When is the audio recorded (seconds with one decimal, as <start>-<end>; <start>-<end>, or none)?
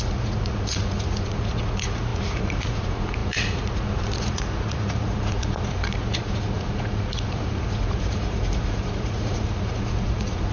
none